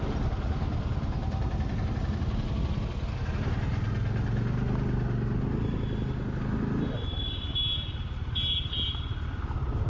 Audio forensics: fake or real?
real